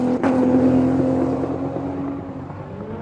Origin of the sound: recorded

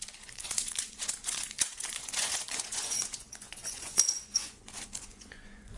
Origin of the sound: remade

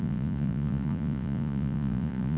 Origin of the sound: remade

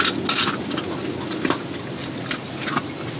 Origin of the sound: recorded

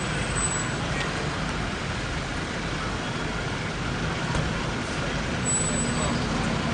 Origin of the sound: recorded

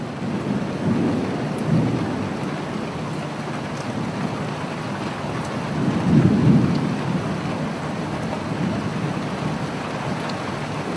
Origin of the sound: recorded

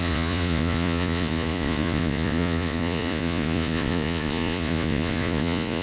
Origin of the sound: remade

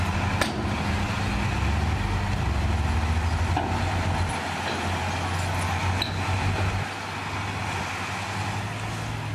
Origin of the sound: recorded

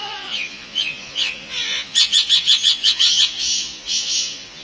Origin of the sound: remade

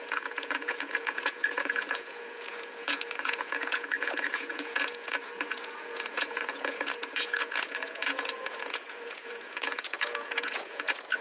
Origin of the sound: remade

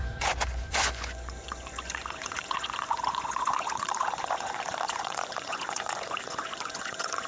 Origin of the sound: remade